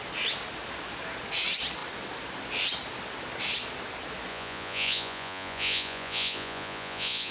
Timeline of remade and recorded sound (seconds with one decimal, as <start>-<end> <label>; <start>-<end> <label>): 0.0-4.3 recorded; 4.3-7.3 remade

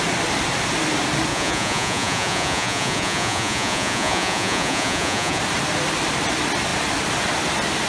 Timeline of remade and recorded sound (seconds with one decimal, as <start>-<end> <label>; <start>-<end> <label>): 0.0-1.3 recorded; 1.3-5.4 remade; 5.4-7.9 recorded

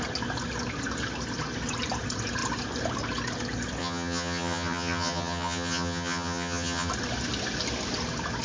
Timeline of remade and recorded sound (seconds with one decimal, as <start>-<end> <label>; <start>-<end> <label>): 0.0-3.8 recorded; 3.8-6.9 remade; 6.9-8.4 recorded

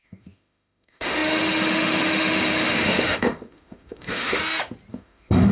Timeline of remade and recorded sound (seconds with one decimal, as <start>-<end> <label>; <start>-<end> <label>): 0.0-4.4 remade; 4.4-4.9 recorded; 4.9-5.5 remade

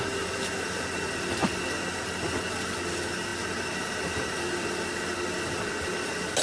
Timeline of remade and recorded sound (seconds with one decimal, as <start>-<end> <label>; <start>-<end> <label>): 0.0-6.4 recorded

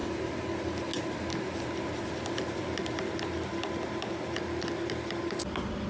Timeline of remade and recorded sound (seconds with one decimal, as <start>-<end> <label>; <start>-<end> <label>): 0.0-5.9 recorded

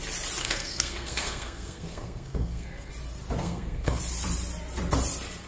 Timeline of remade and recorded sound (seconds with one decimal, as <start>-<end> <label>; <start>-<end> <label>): 0.0-0.4 recorded; 0.4-2.9 remade; 2.9-3.4 recorded; 3.4-4.0 remade; 4.0-5.5 recorded

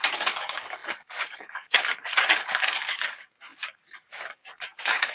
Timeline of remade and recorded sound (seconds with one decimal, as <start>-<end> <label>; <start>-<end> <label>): 0.0-5.1 remade